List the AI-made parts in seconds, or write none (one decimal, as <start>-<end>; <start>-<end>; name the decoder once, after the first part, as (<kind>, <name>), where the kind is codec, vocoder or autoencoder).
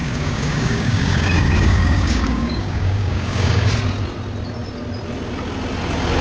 0.0-3.7 (codec, DAC)